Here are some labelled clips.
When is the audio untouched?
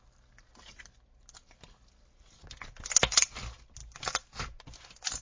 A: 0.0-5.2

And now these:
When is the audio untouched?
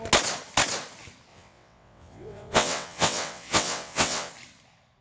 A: 0.0-1.3; 4.3-5.0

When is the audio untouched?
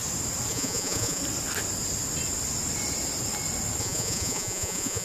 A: 0.0-0.5; 1.2-3.8